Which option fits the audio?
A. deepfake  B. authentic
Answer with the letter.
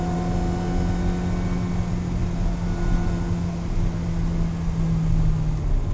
B